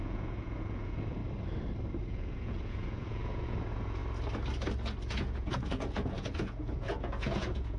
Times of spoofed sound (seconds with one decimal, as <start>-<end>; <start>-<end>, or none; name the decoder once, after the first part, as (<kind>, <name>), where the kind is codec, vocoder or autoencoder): 0.0-1.2 (vocoder, Vocos); 2.1-4.0; 5.1-7.8